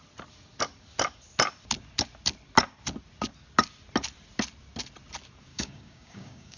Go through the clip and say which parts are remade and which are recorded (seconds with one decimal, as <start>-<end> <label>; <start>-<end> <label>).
0.0-5.5 recorded; 5.5-6.6 remade